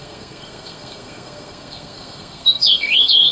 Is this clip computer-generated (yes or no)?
yes